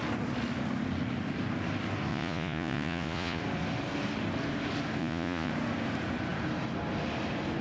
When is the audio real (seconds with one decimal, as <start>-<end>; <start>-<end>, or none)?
0.0-2.1; 3.4-5.0; 5.5-7.6